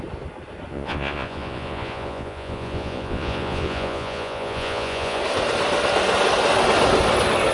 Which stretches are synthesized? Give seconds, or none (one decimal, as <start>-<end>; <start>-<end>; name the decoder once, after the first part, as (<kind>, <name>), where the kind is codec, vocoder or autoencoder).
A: 0.7-5.2 (vocoder, Vocos)